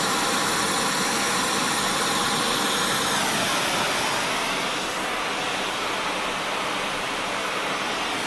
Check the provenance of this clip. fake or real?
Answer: real